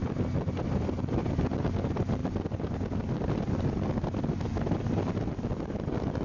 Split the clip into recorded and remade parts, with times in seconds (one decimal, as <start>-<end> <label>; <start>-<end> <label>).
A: 0.0-6.2 recorded